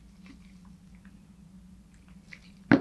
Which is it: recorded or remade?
recorded